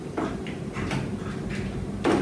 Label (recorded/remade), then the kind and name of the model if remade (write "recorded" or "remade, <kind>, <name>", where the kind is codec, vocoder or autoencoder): recorded